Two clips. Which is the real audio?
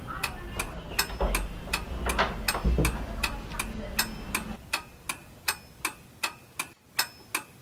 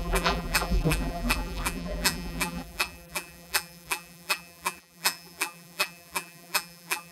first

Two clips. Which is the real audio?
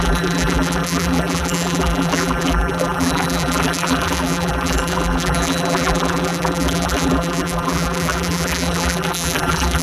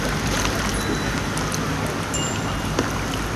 second